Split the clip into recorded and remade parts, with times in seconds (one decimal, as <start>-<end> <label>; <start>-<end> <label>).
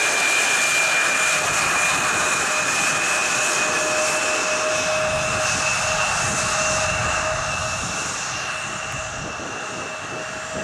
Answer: 0.0-5.7 recorded; 5.7-6.6 remade; 6.6-10.6 recorded